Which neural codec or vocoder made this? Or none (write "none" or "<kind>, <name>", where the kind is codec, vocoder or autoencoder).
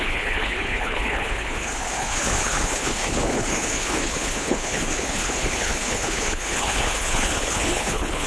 codec, HILCodec